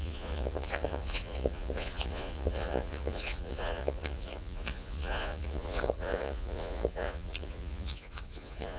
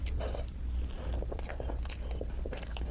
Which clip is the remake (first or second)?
first